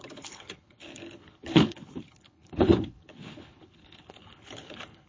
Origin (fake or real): fake